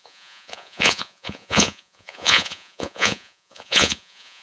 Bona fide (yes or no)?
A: no